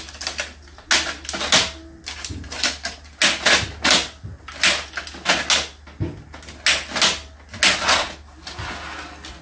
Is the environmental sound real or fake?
real